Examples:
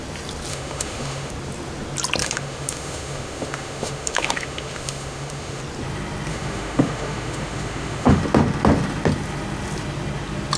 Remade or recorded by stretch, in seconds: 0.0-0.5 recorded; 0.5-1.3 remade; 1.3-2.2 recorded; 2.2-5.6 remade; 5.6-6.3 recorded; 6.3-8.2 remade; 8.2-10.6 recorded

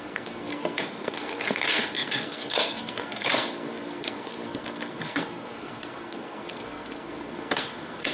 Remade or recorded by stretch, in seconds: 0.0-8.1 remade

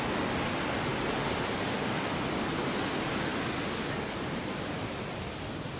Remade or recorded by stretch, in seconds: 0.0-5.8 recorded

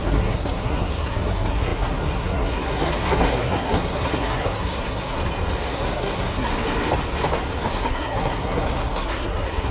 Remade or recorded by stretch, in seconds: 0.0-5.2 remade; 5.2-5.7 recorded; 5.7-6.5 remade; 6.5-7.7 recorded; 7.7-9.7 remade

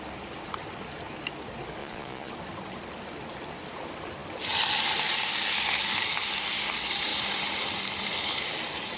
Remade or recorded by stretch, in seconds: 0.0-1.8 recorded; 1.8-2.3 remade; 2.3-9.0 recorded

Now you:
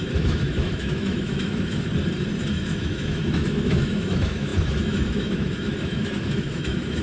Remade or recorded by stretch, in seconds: 0.0-1.9 remade; 1.9-2.5 recorded; 2.5-7.0 remade

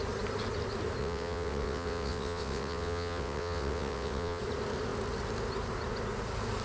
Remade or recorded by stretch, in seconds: 0.0-1.0 recorded; 1.0-4.4 remade; 4.4-6.6 recorded

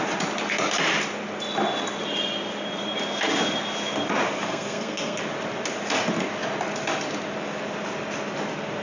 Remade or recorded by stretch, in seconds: 0.0-4.5 recorded; 4.5-5.2 remade; 5.2-8.8 recorded